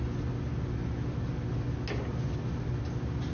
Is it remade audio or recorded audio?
recorded